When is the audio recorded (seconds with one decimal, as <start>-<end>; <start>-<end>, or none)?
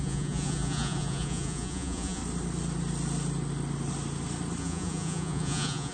2.2-4.6